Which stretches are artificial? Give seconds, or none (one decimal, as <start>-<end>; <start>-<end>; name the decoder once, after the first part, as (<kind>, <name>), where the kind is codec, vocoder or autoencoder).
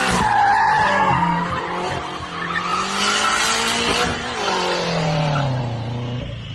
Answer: 0.9-1.6 (codec, SNAC)